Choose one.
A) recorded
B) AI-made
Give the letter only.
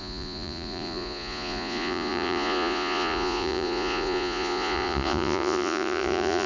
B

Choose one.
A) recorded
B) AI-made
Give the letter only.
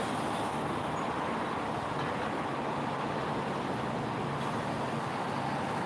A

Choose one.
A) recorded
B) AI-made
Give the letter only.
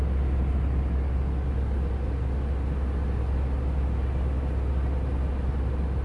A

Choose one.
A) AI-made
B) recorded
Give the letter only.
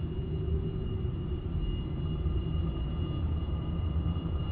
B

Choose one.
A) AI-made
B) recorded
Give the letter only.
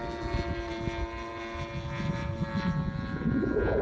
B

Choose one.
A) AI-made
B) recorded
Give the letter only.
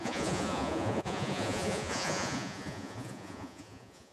A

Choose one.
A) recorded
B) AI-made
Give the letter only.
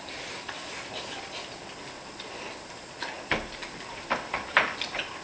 A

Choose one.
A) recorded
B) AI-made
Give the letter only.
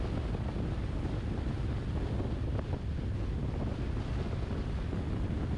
A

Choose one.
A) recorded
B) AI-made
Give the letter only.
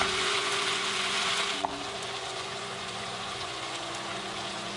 B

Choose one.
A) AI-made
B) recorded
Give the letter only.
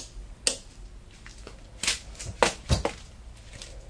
B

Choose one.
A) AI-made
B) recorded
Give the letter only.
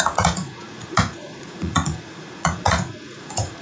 A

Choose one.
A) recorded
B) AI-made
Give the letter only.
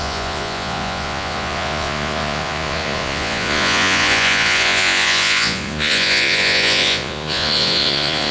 B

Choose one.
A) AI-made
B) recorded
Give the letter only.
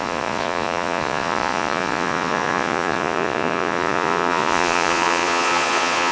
A